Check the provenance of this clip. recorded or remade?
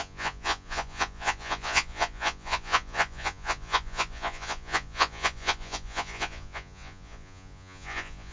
remade